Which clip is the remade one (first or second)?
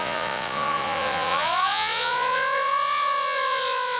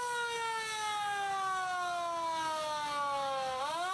first